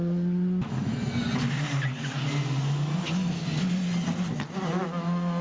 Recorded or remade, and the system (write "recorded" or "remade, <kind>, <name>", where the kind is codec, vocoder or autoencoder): recorded